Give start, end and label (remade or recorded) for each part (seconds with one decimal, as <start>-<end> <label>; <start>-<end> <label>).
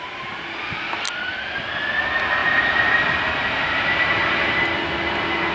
0.0-2.4 recorded; 2.4-4.6 remade; 4.6-5.5 recorded